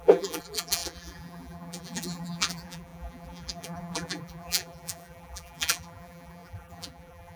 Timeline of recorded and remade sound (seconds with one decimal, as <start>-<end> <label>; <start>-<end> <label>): 0.0-7.4 remade